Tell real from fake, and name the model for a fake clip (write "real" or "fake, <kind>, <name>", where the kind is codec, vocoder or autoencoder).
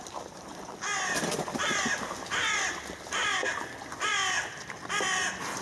real